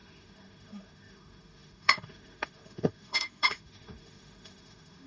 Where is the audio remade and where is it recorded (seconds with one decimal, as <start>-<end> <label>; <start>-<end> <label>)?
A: 0.0-5.1 remade